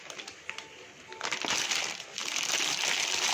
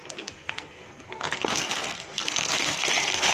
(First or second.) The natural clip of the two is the first